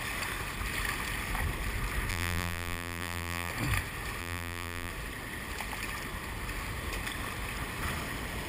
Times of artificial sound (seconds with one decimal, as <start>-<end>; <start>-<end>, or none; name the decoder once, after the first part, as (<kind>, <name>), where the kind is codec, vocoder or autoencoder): 2.1-3.5 (vocoder, BigVGAN v2); 4.2-4.9